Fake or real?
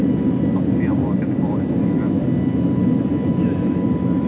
real